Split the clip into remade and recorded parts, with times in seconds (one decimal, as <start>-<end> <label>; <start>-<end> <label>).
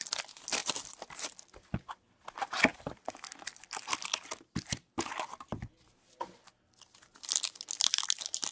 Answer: 0.0-0.6 recorded; 0.6-1.5 remade; 1.5-2.7 recorded; 2.7-5.5 remade; 5.5-8.5 recorded